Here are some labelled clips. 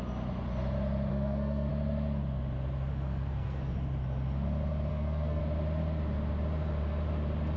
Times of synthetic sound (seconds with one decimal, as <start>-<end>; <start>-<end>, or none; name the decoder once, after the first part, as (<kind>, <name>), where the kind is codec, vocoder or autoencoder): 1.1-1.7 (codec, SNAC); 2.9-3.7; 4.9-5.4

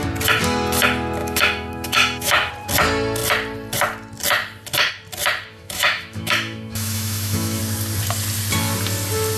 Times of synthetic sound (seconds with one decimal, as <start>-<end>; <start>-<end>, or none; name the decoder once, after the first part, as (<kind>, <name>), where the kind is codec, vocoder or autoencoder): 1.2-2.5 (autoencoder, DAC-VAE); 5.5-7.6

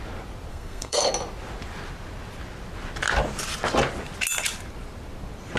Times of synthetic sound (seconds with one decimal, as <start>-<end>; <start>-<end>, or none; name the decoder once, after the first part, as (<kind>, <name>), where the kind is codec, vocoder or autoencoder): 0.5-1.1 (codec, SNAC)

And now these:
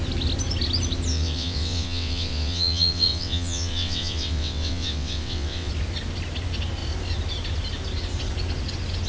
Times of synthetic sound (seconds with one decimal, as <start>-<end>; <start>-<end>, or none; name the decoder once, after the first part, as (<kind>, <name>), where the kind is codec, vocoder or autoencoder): 1.1-5.7 (vocoder, WaveNeXt)

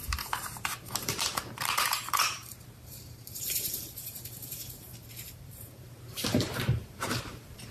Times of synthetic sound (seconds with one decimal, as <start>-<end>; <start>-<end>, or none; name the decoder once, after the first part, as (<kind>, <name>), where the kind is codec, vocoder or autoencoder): 0.0-7.7 (vocoder, BigVGAN v2)